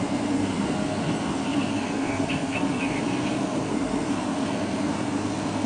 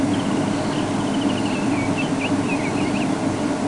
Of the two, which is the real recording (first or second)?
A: second